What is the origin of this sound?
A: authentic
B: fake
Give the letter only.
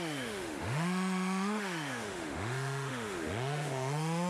B